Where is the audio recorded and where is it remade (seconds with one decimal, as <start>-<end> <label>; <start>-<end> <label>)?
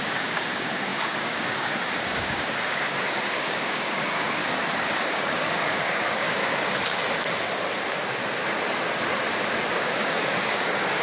0.0-4.4 remade; 4.4-5.0 recorded; 5.0-6.4 remade; 6.4-9.7 recorded; 9.7-11.0 remade